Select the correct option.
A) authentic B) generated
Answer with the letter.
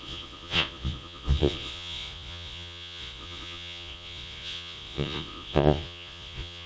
B